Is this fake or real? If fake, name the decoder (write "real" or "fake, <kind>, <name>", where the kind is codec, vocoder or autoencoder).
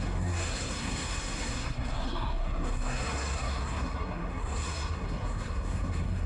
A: fake, codec, SNAC